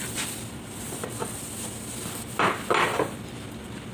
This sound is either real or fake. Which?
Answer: real